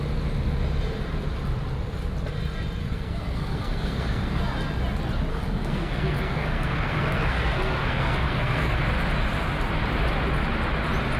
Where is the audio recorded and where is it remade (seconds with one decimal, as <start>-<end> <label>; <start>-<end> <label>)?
0.0-2.8 recorded; 2.8-4.4 remade; 4.4-5.3 recorded; 5.3-8.8 remade; 8.8-11.2 recorded